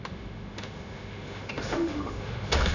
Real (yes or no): no